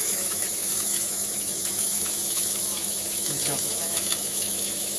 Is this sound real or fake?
fake